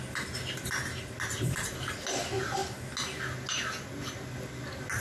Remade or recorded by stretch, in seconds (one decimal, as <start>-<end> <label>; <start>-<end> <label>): 0.0-5.0 recorded